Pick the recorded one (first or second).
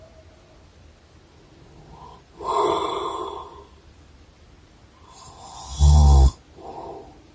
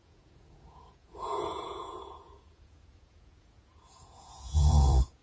first